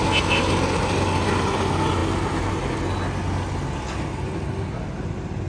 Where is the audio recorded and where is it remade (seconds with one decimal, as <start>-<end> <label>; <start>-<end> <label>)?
0.0-5.5 recorded